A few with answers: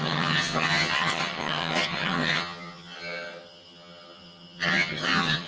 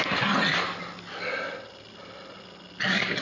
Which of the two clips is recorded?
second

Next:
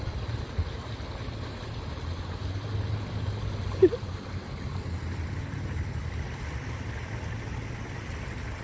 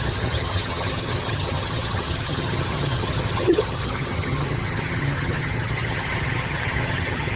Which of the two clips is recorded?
first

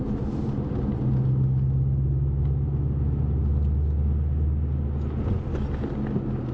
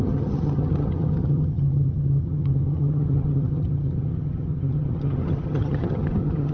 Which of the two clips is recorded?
first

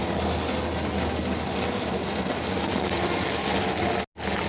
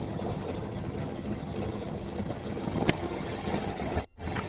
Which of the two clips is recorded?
first